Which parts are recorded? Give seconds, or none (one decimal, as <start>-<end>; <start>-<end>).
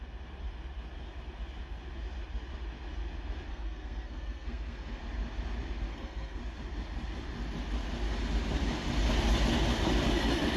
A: 0.0-3.5; 5.0-5.9; 6.4-10.6